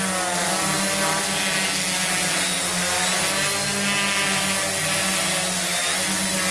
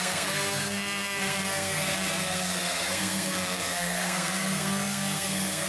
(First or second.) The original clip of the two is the first